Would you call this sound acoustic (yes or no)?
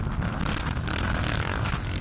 yes